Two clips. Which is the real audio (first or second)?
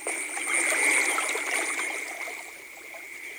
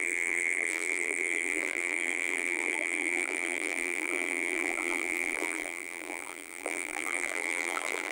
first